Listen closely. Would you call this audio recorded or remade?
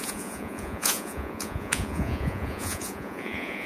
remade